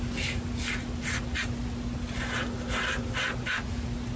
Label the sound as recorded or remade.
recorded